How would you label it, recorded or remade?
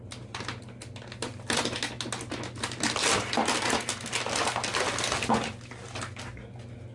recorded